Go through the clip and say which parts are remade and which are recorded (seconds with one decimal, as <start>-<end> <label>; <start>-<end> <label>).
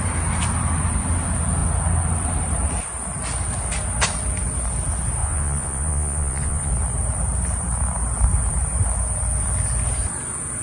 0.0-5.2 recorded; 5.2-6.7 remade; 6.7-10.6 recorded